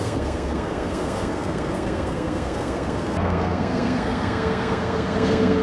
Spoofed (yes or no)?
yes